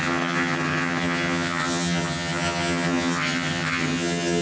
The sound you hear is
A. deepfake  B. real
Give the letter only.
A